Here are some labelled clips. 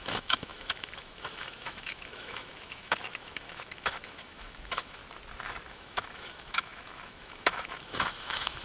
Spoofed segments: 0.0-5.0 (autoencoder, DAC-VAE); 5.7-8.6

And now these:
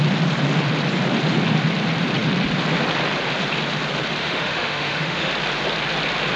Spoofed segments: 4.2-5.3 (autoencoder, DAC-VAE)

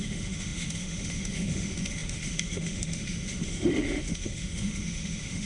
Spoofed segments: 0.0-5.5 (autoencoder, DAC-VAE)